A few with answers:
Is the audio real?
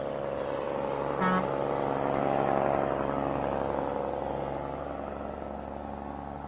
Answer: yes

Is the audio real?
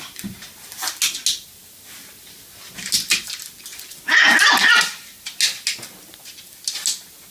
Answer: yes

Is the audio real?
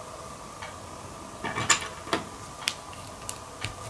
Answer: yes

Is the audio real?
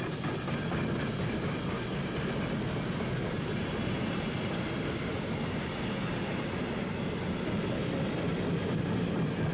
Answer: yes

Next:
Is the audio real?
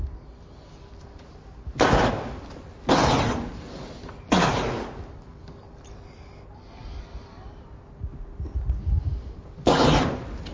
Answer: yes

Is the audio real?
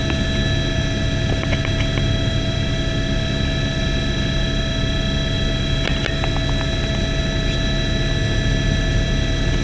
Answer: yes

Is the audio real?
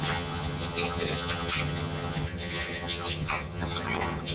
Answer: no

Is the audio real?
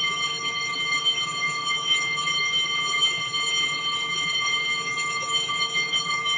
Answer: no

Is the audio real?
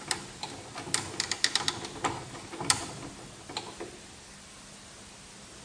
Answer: yes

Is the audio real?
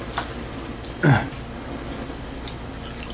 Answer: yes